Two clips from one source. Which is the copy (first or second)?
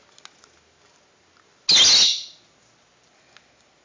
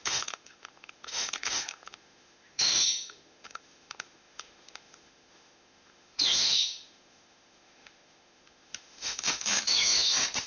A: second